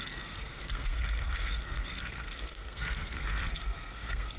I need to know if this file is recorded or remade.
remade